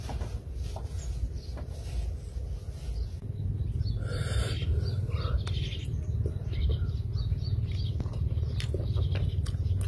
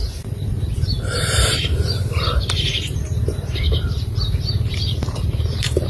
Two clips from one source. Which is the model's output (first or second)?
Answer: second